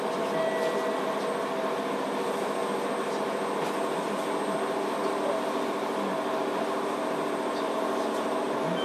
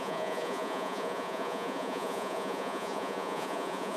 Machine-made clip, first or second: second